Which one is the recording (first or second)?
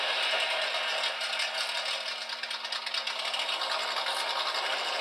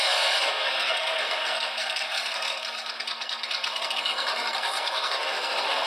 first